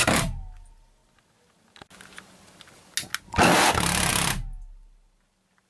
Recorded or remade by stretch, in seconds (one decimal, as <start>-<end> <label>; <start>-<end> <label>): 0.0-5.7 recorded